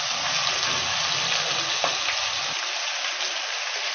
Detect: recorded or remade recorded